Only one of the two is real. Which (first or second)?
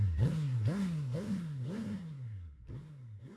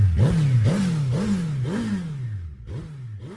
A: second